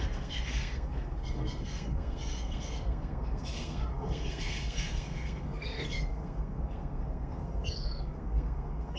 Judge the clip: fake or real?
fake